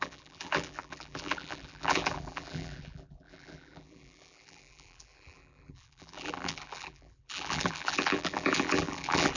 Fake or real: fake